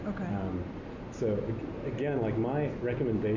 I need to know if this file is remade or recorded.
recorded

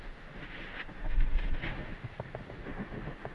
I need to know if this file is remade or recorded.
remade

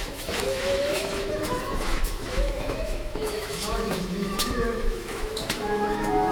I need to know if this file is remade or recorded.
remade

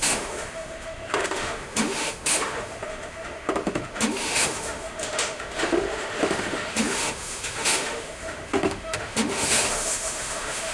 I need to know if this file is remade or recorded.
remade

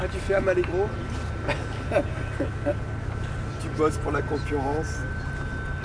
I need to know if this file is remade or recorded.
recorded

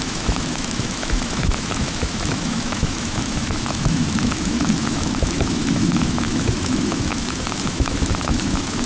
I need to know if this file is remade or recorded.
remade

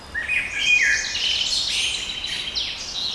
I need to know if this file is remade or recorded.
recorded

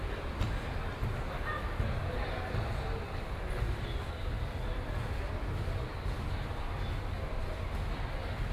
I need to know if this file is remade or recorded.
recorded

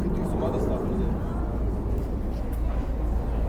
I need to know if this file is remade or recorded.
recorded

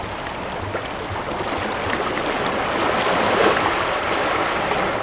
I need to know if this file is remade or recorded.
recorded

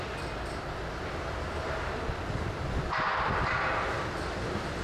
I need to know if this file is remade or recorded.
recorded